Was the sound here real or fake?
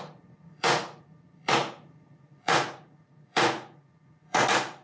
fake